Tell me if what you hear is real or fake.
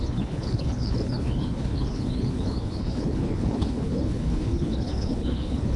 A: fake